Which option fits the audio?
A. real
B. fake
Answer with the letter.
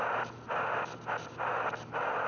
A